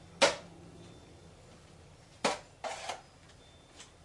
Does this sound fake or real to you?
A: real